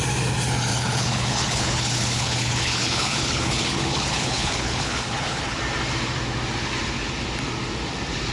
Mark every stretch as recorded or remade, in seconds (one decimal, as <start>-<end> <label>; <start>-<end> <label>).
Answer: 0.0-0.7 recorded; 0.7-5.6 remade; 5.6-8.3 recorded